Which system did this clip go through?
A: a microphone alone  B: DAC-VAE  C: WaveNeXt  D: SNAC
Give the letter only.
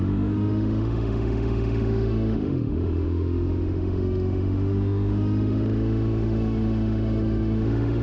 B